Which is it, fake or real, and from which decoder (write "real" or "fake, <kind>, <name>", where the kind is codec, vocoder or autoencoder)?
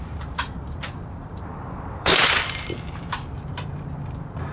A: fake, vocoder, BigVGAN v2